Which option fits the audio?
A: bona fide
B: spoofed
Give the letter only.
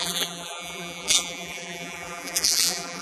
B